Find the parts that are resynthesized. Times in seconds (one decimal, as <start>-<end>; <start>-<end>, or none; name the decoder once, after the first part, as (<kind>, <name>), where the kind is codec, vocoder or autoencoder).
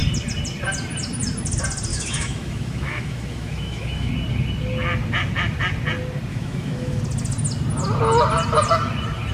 1.9-4.1 (autoencoder, DAC-VAE); 6.3-7.0